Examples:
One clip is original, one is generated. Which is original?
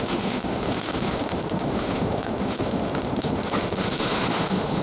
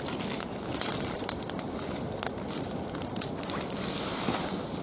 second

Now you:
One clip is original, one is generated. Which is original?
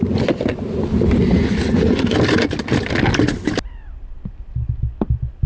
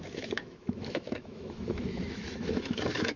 first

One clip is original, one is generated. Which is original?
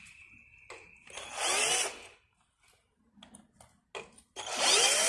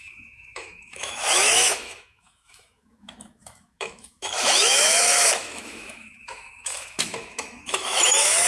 first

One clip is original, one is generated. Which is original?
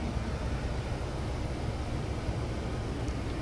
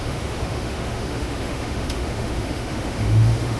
first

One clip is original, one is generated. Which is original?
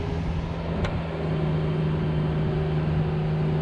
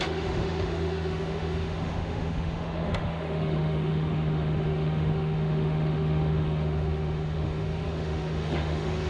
first